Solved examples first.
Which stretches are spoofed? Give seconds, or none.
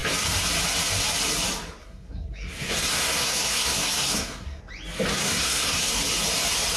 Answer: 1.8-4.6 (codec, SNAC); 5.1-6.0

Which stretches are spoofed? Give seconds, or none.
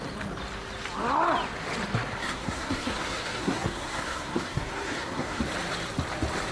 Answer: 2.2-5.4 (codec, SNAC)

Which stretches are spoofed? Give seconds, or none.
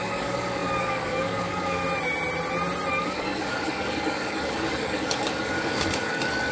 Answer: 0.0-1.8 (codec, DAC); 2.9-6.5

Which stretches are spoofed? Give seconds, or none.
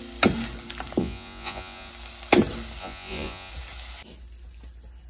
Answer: 1.0-1.9 (vocoder, Vocos); 2.8-3.5